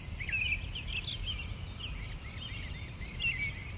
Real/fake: real